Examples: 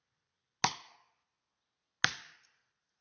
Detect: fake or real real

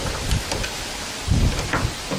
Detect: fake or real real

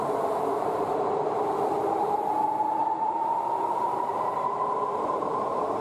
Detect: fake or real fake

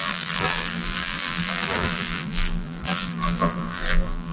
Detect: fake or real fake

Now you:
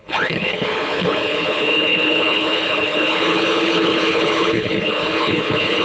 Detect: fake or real fake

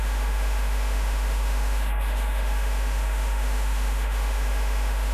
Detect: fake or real fake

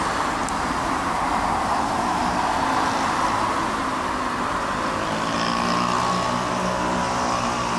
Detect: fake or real real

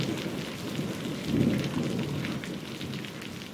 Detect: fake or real real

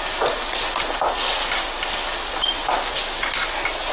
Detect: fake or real real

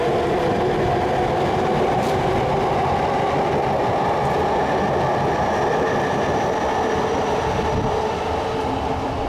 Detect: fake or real real